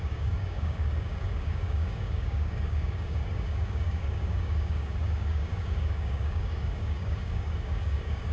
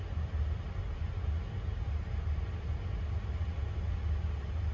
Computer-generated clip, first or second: first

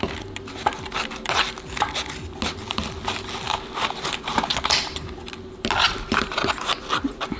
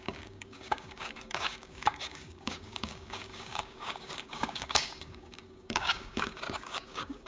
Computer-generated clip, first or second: second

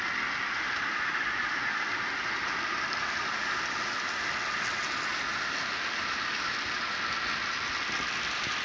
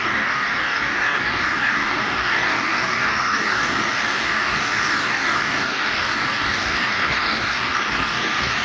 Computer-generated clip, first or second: second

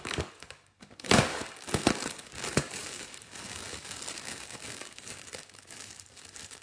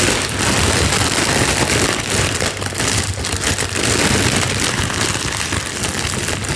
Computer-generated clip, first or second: first